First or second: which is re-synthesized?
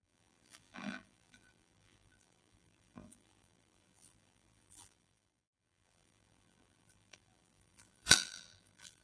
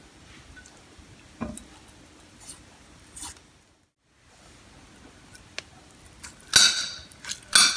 first